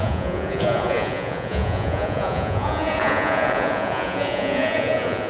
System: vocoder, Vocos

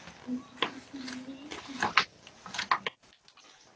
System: none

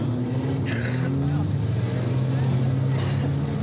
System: none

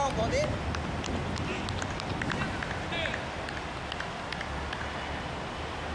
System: none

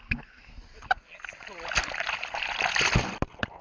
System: none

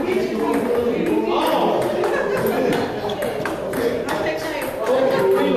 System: none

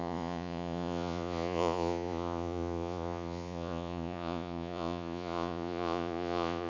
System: vocoder, Vocos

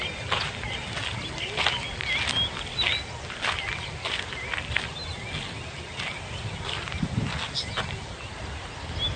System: none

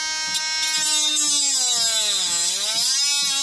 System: none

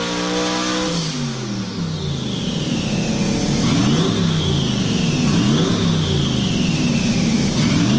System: none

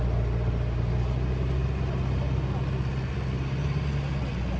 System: none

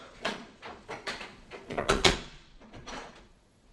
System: vocoder, Vocos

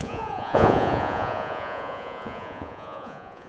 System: vocoder, Vocos